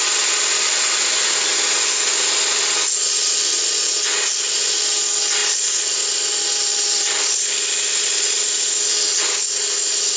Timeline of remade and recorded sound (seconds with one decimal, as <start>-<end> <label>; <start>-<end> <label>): 0.0-5.4 recorded; 5.4-8.8 remade; 8.8-10.2 recorded